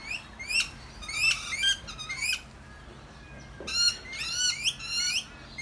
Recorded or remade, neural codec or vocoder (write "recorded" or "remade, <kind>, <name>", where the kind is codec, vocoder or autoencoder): recorded